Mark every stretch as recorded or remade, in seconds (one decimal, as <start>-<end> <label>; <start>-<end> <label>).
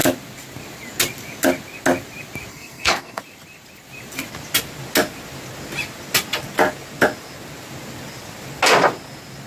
0.0-2.5 recorded; 2.5-3.2 remade; 3.2-9.5 recorded